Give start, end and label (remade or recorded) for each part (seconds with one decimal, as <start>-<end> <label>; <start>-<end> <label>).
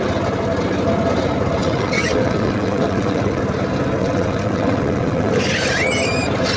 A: 0.0-1.6 recorded; 1.6-3.4 remade; 3.4-4.0 recorded; 4.0-5.3 remade; 5.3-6.6 recorded